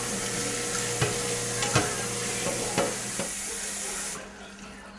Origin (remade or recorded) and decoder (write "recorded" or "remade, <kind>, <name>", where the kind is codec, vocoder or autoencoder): recorded